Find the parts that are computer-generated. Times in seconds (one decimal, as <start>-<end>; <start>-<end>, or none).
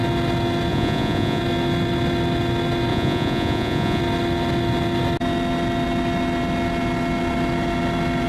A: 0.7-1.4; 2.9-4.0